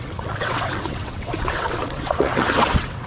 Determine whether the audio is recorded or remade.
remade